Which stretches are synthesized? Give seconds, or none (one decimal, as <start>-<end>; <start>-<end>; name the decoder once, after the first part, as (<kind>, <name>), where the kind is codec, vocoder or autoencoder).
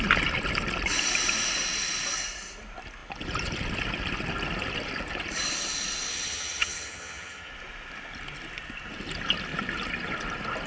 6.1-7.5 (vocoder, HiFi-GAN)